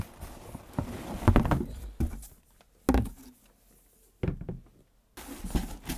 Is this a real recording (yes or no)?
yes